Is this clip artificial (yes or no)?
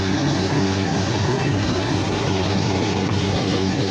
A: yes